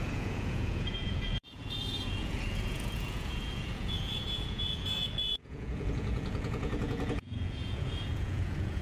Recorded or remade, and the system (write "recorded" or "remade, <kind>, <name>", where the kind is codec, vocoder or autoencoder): remade, vocoder, Vocos